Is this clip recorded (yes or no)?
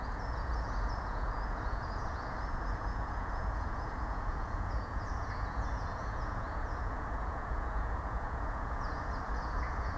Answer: no